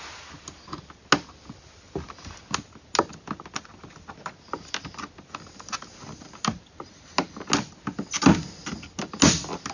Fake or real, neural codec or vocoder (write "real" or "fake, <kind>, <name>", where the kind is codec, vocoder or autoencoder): real